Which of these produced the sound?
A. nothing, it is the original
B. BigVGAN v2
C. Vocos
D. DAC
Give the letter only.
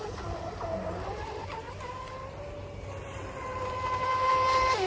A